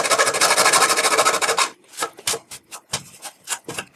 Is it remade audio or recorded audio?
recorded